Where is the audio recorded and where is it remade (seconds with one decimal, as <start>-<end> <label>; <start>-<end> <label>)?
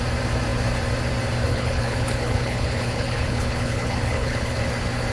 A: 0.0-1.5 recorded; 1.5-4.6 remade; 4.6-5.1 recorded